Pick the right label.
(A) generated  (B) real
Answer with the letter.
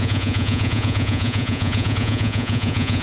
A